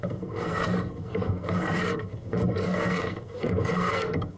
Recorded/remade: remade